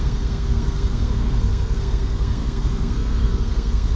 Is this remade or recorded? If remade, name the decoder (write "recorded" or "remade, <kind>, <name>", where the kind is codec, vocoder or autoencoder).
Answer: remade, codec, SNAC